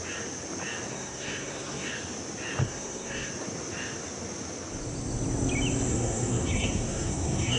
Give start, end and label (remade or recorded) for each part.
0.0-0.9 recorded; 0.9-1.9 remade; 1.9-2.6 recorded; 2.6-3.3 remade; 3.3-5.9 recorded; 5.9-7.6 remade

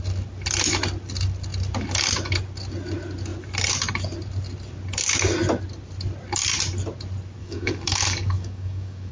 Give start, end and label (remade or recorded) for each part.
0.0-7.4 recorded; 7.4-9.1 remade